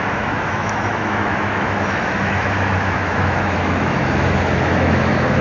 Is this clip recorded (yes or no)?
no